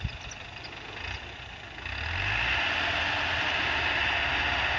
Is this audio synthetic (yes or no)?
no